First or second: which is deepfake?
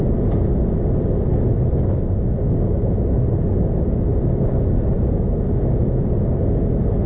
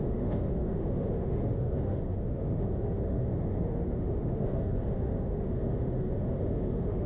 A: second